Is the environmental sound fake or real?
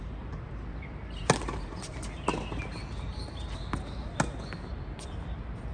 real